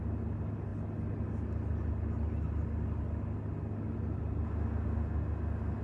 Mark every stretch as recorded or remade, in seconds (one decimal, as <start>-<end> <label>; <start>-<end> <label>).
0.0-5.8 recorded